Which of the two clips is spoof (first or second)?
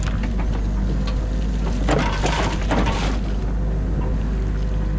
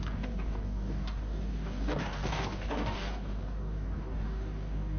second